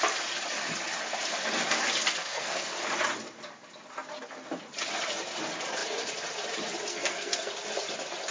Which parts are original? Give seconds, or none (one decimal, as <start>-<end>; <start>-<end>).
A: 0.0-2.2; 2.7-6.9; 7.5-8.3